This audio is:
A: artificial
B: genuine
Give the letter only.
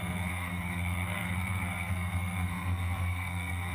A